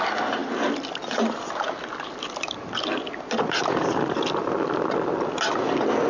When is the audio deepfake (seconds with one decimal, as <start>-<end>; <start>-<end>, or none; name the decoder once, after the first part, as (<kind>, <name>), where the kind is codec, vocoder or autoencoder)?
none